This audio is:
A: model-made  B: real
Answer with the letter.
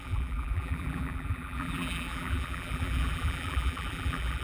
A